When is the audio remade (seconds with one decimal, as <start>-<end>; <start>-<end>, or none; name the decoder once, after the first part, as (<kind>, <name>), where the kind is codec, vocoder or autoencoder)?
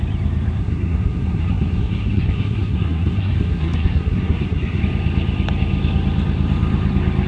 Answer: 0.6-4.8 (codec, SNAC)